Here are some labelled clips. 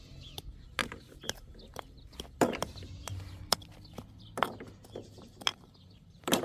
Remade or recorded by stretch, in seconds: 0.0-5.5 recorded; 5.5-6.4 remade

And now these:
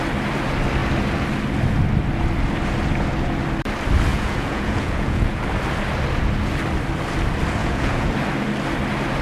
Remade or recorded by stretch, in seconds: 0.0-4.1 recorded; 4.1-5.4 remade; 5.4-7.6 recorded; 7.6-8.1 remade; 8.1-9.2 recorded

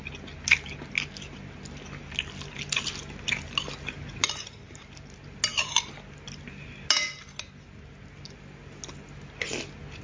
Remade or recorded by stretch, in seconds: 0.0-10.0 recorded

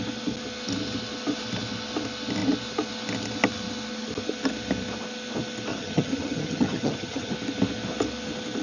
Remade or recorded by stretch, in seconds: 0.0-5.7 recorded; 5.7-7.3 remade; 7.3-8.6 recorded

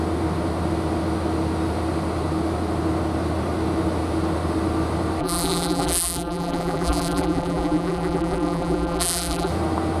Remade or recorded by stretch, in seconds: 0.0-5.2 recorded; 5.2-9.5 remade; 9.5-10.0 recorded

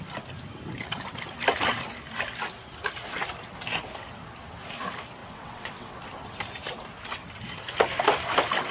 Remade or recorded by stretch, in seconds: 0.0-5.2 recorded; 5.2-5.9 remade; 5.9-8.7 recorded

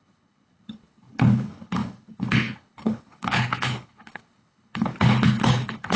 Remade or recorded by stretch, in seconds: 0.0-6.0 remade